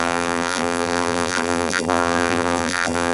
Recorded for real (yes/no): no